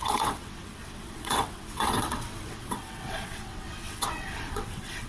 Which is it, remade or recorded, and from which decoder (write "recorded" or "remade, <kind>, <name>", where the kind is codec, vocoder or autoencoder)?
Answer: remade, vocoder, WaveNeXt